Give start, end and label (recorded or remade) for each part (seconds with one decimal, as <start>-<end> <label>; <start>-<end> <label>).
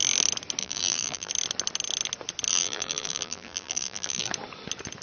0.0-0.6 recorded; 0.6-1.3 remade; 1.3-2.5 recorded; 2.5-4.3 remade; 4.3-5.0 recorded